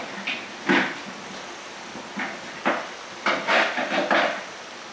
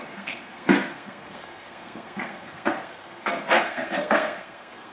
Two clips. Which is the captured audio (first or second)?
first